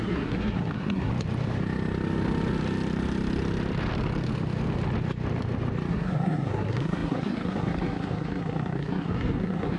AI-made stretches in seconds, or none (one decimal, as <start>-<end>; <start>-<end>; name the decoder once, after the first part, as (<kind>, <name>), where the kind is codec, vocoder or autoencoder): 0.0-1.1 (codec, SNAC); 5.9-9.8